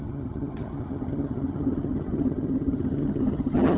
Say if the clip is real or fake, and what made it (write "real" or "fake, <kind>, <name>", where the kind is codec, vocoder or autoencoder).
fake, vocoder, HiFi-GAN